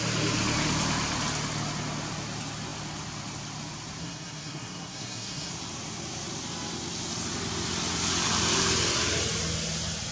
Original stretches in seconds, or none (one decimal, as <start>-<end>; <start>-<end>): 0.0-4.0; 5.5-10.1